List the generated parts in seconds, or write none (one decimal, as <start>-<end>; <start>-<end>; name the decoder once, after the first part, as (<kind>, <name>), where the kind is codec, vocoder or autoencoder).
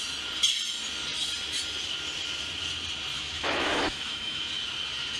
3.1-4.4 (autoencoder, DAC-VAE)